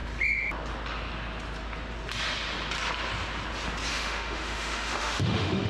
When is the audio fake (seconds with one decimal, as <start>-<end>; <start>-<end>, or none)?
3.9-5.7